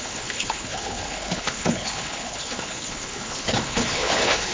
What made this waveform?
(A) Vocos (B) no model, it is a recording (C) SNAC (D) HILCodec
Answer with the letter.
D